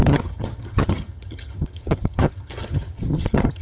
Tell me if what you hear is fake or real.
fake